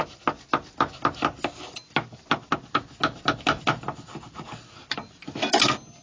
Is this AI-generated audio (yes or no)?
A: no